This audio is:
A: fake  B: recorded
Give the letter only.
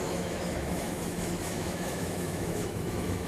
A